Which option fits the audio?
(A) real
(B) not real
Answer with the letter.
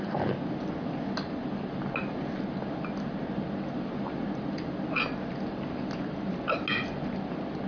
A